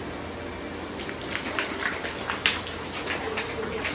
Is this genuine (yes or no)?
yes